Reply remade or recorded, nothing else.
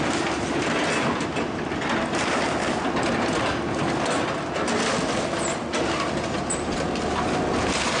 recorded